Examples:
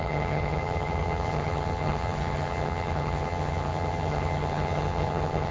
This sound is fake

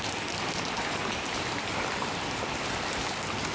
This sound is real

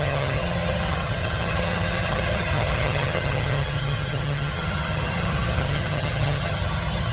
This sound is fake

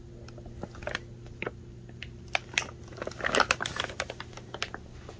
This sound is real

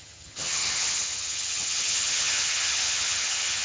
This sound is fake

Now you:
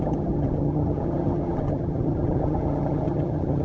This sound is fake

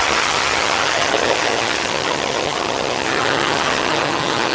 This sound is fake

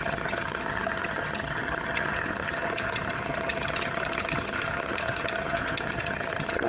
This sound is fake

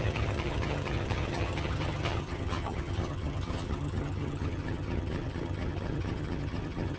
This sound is fake